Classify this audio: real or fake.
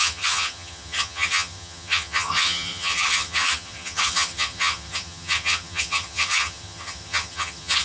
fake